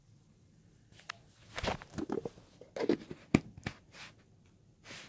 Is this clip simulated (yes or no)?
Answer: no